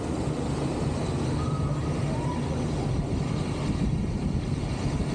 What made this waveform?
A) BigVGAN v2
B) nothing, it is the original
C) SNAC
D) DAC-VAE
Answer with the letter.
B